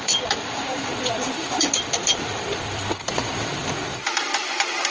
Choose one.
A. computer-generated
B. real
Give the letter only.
B